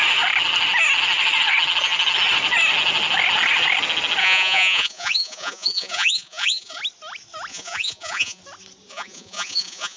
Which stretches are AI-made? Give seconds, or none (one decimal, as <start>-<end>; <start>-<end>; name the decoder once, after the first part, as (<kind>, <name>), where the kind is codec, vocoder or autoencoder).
4.2-6.8 (vocoder, Vocos); 7.5-8.4; 8.9-10.0